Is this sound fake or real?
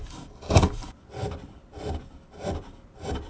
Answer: real